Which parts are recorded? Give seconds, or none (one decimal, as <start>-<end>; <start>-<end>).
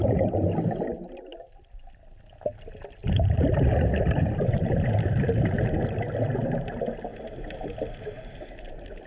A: 0.0-3.0; 5.7-9.1